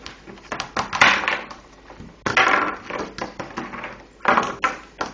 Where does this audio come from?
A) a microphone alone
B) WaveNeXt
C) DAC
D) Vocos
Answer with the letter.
A